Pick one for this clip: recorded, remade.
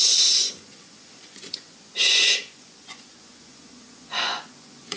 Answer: remade